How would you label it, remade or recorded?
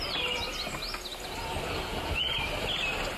recorded